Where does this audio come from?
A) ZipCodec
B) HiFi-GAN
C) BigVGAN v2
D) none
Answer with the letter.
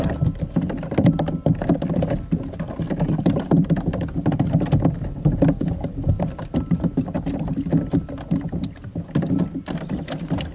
D